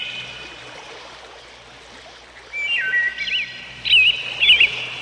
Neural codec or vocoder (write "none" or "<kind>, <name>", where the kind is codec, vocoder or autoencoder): none